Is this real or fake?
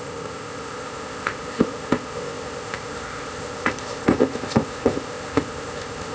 fake